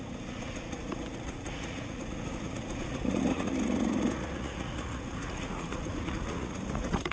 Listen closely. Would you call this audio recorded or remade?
remade